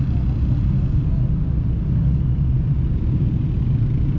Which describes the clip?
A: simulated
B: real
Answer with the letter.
B